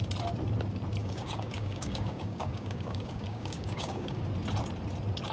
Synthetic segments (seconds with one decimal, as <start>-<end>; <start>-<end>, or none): 1.0-4.2